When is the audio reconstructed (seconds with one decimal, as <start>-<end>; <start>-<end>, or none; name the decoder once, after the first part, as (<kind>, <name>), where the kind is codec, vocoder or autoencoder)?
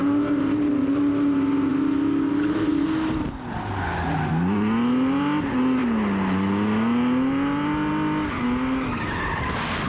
none